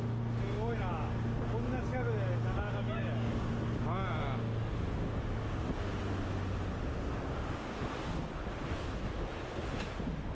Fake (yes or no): no